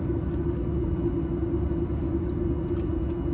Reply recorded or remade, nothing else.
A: recorded